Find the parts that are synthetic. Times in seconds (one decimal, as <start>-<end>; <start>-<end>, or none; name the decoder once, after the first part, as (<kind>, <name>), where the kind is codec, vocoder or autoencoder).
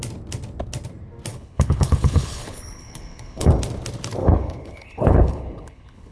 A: 1.3-3.5 (codec, HILCodec); 4.2-6.1